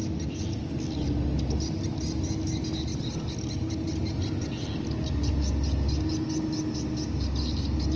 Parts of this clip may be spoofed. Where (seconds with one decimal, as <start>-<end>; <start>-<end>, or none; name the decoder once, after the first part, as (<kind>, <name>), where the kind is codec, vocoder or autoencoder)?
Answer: none